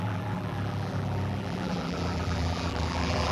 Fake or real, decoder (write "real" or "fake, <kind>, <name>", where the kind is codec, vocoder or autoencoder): fake, vocoder, BigVGAN v2